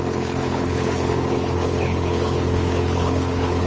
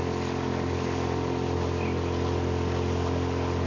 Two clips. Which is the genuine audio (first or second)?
second